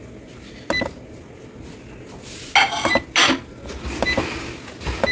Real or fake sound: real